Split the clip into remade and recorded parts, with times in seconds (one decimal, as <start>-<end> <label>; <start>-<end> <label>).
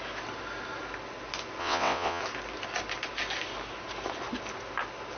0.0-1.6 recorded; 1.6-2.2 remade; 2.2-5.2 recorded